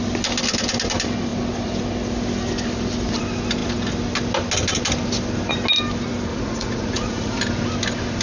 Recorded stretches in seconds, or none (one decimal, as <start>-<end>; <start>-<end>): 0.0-6.3; 7.4-8.2